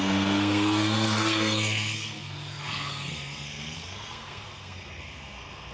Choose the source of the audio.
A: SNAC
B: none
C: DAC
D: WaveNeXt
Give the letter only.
A